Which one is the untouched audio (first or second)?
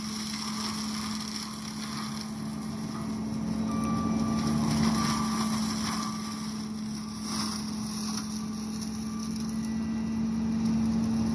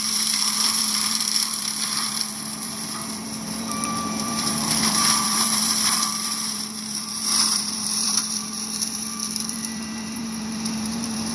first